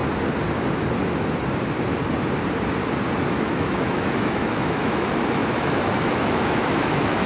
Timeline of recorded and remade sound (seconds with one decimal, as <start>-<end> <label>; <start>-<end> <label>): 0.0-3.3 recorded; 3.3-7.3 remade